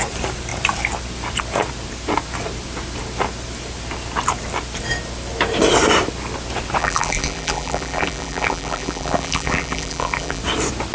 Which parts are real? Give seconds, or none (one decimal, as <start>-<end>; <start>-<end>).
0.0-6.8; 10.4-10.9